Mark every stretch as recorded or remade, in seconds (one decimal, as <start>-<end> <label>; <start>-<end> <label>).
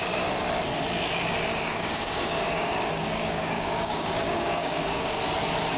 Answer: 0.0-1.7 recorded; 1.7-5.2 remade; 5.2-5.8 recorded